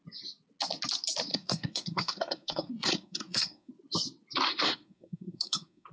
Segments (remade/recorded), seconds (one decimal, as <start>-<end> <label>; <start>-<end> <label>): 0.0-1.3 recorded; 1.3-3.7 remade; 3.7-4.5 recorded; 4.5-5.9 remade